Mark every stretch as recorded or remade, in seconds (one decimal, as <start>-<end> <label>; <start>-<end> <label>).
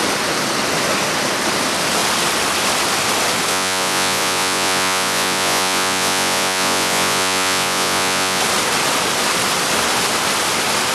0.0-3.5 recorded; 3.5-8.4 remade; 8.4-10.9 recorded